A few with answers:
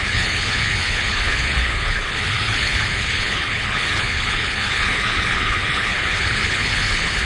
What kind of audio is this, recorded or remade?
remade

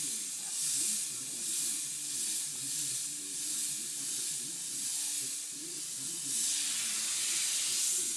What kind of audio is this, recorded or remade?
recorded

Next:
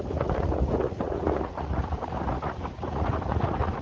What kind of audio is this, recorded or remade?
remade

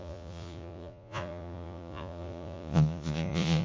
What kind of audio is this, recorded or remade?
remade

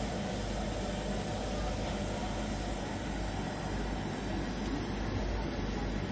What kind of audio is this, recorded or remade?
recorded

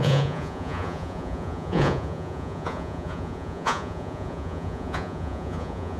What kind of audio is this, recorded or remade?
remade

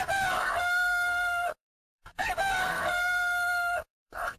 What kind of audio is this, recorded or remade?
remade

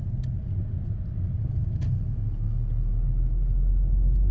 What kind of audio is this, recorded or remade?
recorded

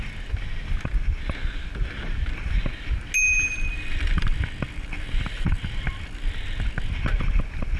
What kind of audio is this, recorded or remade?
recorded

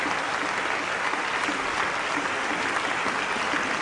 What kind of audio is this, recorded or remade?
recorded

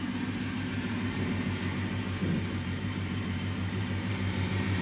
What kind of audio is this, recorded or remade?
remade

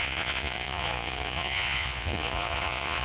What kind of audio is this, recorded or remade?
remade